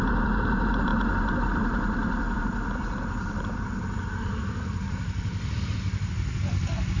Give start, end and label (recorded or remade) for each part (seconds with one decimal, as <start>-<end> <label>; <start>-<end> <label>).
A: 0.0-7.0 recorded